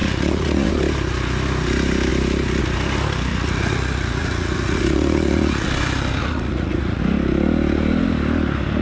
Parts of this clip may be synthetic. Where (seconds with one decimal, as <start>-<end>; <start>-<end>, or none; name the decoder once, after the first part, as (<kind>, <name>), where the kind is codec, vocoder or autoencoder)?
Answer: 0.0-0.7 (vocoder, Vocos); 3.3-5.7; 6.2-7.0